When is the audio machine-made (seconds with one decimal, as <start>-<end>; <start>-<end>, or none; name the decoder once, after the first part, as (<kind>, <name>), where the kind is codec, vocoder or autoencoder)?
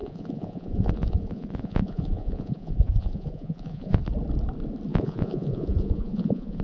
0.0-4.0 (vocoder, Vocos); 4.9-6.6